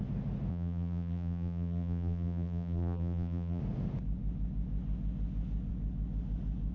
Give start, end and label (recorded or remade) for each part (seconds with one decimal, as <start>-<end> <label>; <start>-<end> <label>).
0.0-0.5 recorded; 0.5-3.6 remade; 3.6-6.7 recorded